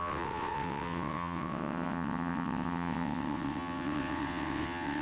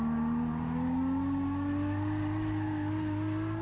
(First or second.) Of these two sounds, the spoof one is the first